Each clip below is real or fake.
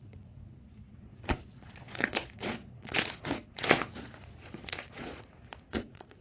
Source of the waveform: fake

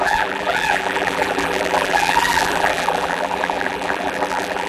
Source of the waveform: fake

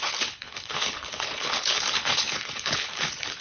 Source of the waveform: fake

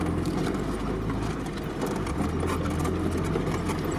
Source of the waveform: real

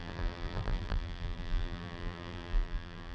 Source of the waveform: fake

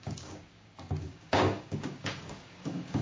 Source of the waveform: fake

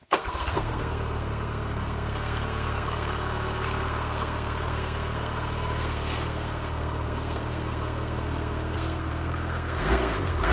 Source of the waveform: fake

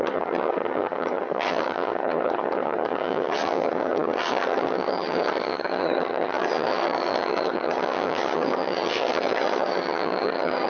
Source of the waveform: fake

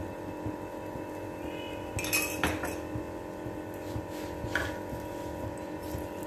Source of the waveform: real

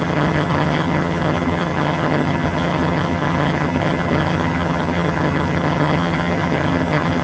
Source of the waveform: fake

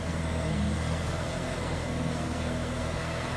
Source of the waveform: fake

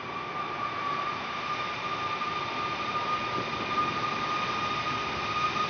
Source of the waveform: real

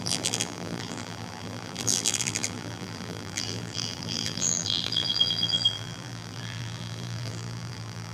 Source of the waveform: fake